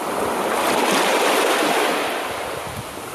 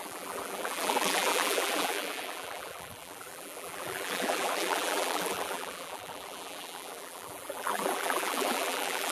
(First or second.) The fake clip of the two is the second